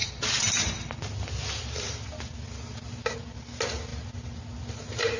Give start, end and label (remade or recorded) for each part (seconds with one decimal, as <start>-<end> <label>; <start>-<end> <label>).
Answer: 0.0-5.2 recorded